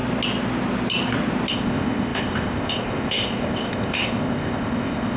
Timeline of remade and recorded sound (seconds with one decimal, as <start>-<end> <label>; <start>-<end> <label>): 0.0-1.5 recorded; 1.5-5.2 remade